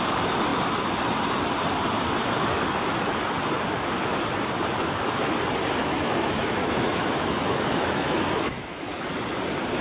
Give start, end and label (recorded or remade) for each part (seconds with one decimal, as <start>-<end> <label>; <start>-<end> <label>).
0.0-5.8 recorded; 5.8-9.1 remade; 9.1-9.8 recorded